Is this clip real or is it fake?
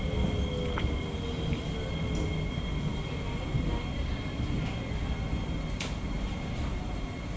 real